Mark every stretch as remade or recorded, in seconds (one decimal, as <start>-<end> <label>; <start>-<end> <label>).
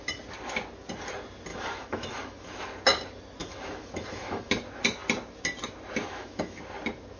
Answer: 0.0-1.5 recorded; 1.5-2.6 remade; 2.6-3.4 recorded; 3.4-4.5 remade; 4.5-6.0 recorded; 6.0-6.6 remade; 6.6-7.2 recorded